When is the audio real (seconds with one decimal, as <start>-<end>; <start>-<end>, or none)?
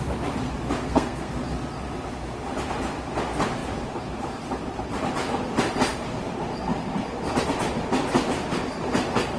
0.0-0.8; 1.3-9.4